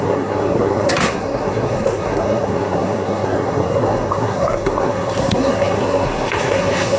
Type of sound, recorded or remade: remade